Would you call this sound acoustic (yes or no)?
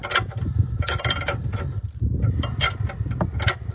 yes